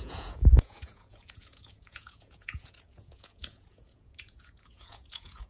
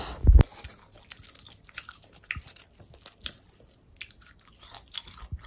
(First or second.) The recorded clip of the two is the second